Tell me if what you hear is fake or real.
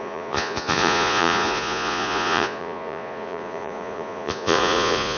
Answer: fake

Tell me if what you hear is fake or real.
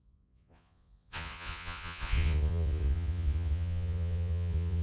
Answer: fake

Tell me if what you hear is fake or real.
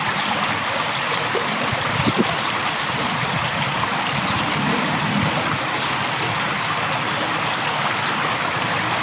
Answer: real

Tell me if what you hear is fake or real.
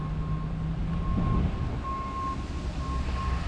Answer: real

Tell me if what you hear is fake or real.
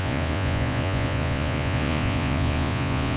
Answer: fake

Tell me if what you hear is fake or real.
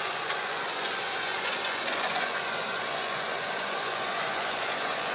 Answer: fake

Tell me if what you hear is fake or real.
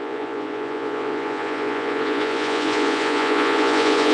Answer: fake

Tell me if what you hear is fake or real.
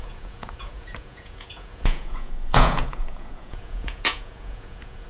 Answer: fake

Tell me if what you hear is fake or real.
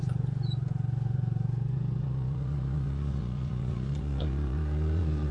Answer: fake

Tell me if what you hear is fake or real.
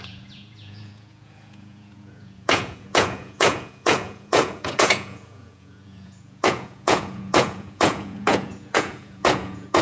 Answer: fake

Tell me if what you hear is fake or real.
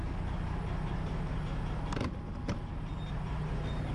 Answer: real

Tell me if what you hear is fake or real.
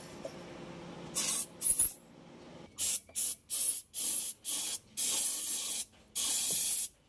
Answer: real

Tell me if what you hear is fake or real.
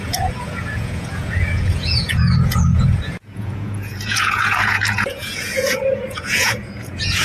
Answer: fake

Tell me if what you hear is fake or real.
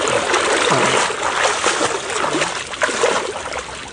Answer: real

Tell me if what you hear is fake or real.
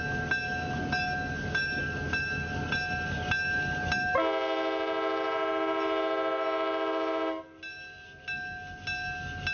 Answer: real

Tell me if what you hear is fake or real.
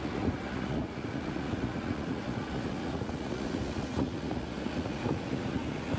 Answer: fake